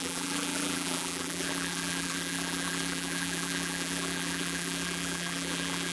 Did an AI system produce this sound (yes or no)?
yes